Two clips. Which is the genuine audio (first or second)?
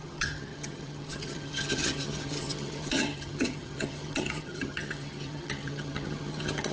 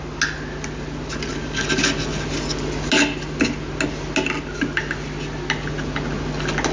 second